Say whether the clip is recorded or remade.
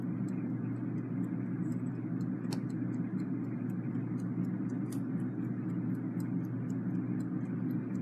recorded